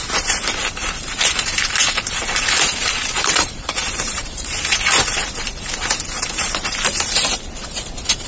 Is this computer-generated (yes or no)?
yes